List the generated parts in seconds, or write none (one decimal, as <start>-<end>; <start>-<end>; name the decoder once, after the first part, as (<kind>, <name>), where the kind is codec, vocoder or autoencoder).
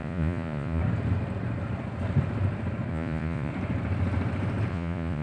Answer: 0.0-0.8 (vocoder, Vocos); 2.9-3.5; 4.7-5.2